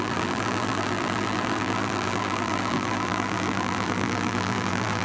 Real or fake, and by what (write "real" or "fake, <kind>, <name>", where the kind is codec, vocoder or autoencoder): fake, vocoder, BigVGAN v2